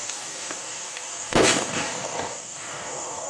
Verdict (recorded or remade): remade